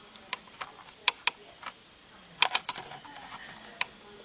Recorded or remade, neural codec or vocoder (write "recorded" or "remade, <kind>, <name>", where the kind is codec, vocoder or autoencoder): recorded